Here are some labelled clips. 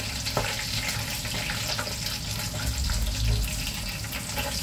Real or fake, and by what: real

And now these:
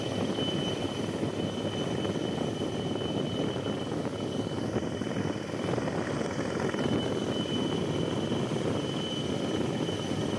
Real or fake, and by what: real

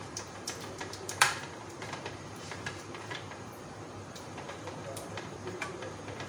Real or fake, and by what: fake, vocoder, BigVGAN v2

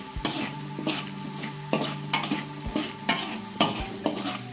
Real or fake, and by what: real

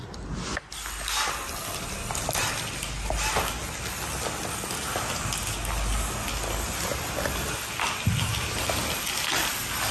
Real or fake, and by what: real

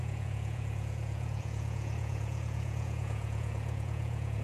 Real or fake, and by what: fake, vocoder, Vocos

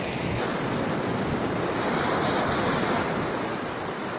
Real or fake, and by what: real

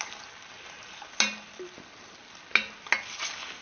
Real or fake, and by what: real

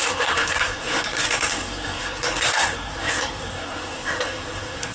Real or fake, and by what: fake, codec, SNAC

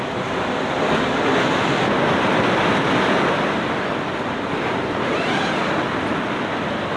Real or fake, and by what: real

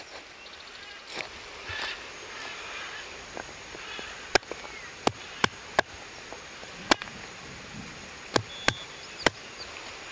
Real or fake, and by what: real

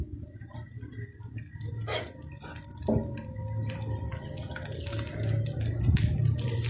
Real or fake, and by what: real